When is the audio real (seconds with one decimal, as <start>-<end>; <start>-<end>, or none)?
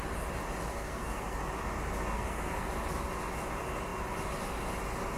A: 0.0-0.7; 1.5-2.1; 2.7-5.2